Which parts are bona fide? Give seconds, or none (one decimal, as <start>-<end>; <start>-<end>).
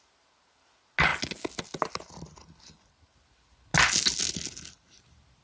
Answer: 0.0-5.4